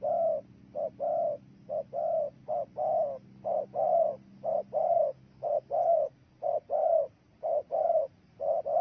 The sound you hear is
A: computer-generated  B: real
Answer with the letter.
B